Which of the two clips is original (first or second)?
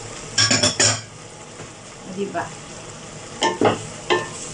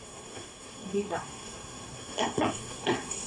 first